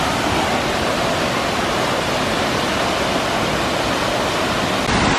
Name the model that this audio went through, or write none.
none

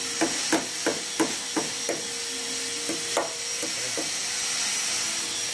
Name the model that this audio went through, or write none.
none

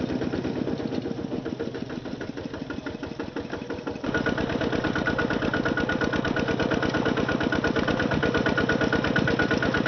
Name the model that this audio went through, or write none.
none